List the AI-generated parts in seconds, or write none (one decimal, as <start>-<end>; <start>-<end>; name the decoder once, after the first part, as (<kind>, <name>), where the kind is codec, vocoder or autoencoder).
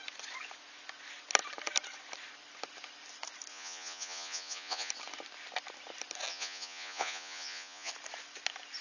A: 3.5-4.9 (vocoder, Vocos); 6.3-7.9